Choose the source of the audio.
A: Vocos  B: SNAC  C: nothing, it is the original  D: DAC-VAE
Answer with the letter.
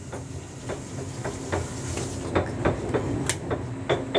C